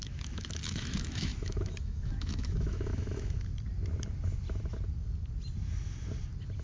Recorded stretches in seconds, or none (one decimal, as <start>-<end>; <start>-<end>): 3.5-6.6